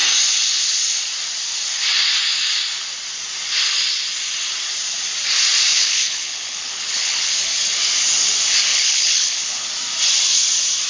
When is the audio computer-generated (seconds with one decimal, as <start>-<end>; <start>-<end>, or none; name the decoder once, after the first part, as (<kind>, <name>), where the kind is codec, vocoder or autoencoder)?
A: 5.7-7.4 (codec, HILCodec); 8.7-9.7